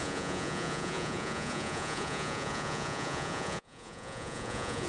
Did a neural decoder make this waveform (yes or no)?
yes